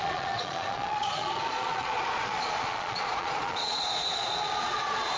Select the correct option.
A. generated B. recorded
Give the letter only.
A